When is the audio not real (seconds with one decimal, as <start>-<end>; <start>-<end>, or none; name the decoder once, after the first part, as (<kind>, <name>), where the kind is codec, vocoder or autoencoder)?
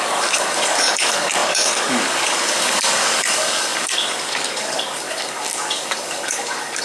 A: 0.0-6.8 (codec, DAC)